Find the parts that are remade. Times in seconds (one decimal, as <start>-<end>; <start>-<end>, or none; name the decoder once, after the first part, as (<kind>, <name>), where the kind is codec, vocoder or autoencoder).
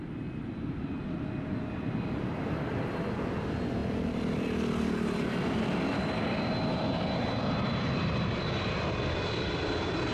none